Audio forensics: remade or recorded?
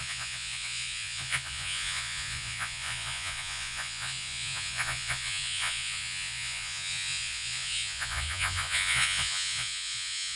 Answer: remade